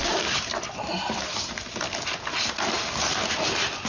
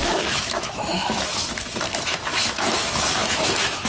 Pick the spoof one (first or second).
second